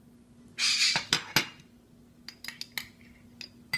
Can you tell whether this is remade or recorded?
recorded